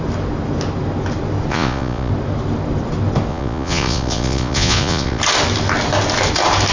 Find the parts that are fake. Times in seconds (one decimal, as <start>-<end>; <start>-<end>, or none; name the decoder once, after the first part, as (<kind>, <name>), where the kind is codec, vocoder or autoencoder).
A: 1.5-2.1 (vocoder, Vocos); 3.3-5.2